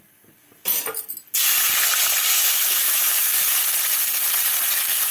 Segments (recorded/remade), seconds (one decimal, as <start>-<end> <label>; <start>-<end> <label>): 0.0-2.3 recorded; 2.3-3.6 remade; 3.6-5.1 recorded